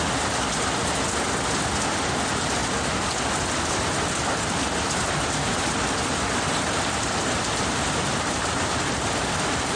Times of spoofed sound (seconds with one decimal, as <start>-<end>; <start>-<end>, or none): none